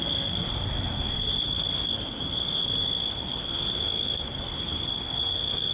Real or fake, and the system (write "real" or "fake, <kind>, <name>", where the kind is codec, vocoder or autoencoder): fake, codec, SNAC